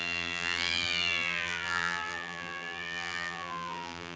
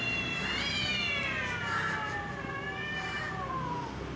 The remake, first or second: first